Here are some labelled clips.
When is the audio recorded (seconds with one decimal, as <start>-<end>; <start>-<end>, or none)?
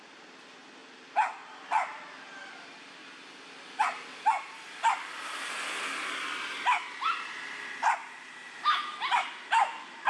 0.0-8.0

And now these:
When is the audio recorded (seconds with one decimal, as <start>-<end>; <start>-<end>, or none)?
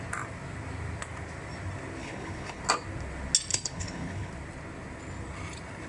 0.0-2.0; 2.6-3.5; 4.3-5.9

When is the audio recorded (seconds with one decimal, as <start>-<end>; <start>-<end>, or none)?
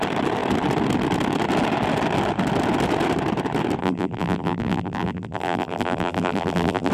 0.0-3.8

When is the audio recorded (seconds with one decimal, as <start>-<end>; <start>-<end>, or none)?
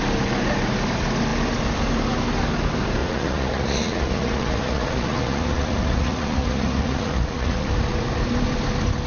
0.0-3.0; 7.7-9.1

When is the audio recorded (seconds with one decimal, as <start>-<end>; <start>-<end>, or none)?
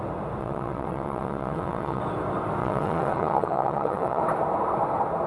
0.0-0.4; 2.0-2.6; 4.2-5.3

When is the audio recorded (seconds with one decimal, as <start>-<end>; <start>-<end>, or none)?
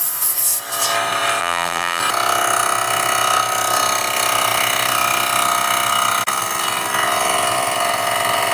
0.0-1.4; 2.0-8.5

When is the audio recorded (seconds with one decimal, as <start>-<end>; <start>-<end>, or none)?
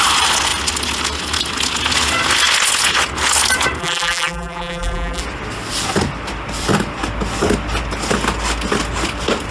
0.0-3.8; 5.2-9.5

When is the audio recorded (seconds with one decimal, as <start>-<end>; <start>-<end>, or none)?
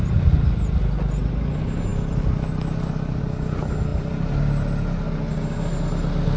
0.0-6.4